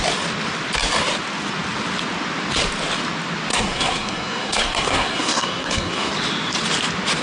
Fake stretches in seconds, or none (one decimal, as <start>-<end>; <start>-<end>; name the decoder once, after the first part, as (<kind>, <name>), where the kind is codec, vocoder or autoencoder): 3.5-6.1 (codec, SNAC)